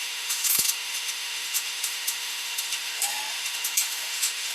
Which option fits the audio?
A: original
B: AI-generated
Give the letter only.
B